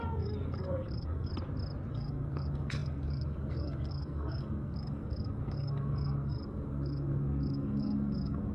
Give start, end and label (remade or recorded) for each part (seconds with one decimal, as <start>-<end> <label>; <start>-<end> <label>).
0.0-1.3 remade; 1.3-1.9 recorded; 1.9-8.5 remade